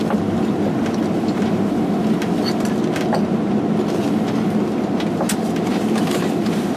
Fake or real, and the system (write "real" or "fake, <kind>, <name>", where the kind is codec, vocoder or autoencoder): real